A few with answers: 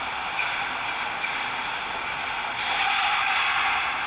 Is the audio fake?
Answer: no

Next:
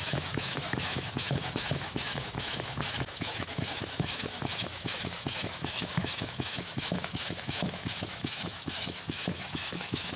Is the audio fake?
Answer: yes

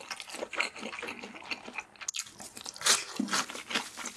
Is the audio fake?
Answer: no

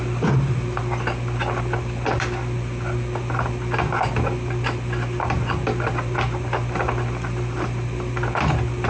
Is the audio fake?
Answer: no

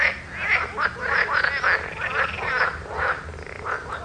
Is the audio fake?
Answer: no